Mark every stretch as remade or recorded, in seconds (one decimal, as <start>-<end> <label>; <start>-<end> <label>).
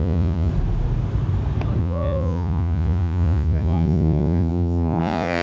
0.0-0.5 remade; 0.5-1.8 recorded; 1.8-5.4 remade